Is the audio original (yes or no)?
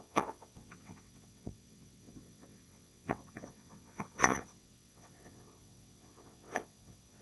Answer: no